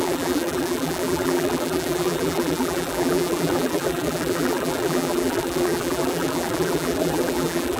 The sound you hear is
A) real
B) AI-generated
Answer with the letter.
B